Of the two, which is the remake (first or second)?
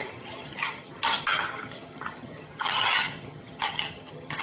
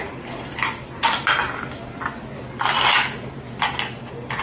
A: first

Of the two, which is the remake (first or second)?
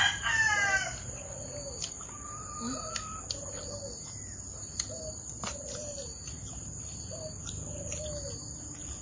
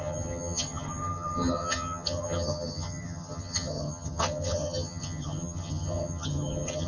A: second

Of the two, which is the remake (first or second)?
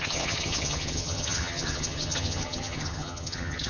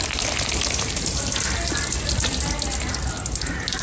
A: first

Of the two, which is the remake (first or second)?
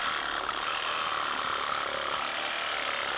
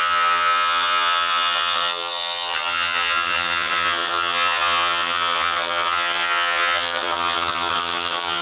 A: second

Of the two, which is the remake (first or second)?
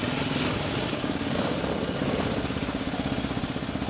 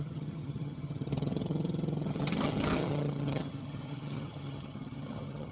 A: second